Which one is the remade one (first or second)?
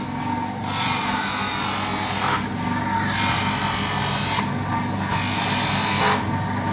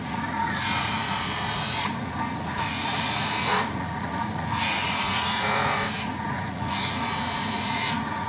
second